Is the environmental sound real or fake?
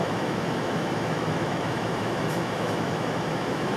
fake